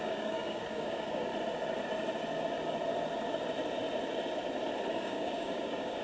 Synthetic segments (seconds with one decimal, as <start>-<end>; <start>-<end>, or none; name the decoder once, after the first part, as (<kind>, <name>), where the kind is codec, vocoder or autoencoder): 0.0-1.3 (codec, DAC); 4.9-6.0